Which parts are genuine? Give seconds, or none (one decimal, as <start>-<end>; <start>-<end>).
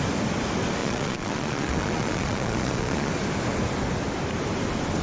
0.0-0.8; 3.1-5.0